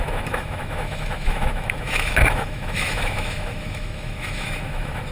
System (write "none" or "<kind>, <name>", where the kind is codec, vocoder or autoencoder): autoencoder, DAC-VAE